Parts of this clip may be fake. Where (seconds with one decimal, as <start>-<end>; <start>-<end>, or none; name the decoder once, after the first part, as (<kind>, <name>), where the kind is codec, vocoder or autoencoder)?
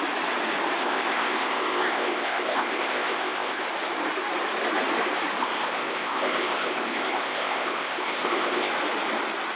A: 0.8-3.6 (codec, ZipCodec); 5.4-8.7